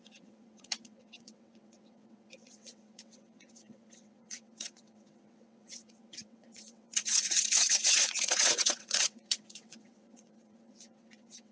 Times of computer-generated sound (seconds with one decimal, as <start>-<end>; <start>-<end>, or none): 0.0-11.5